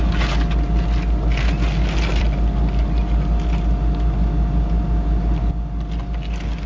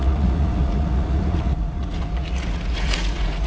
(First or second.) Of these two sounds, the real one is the first